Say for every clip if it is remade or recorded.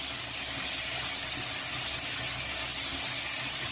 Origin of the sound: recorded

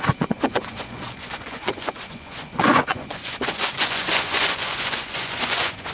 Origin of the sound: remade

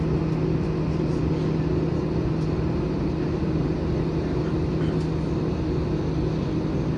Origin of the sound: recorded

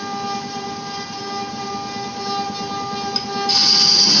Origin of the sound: recorded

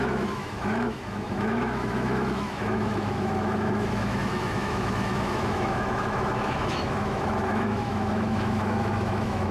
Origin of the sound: remade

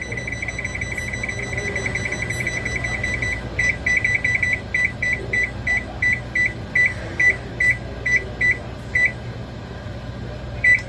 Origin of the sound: recorded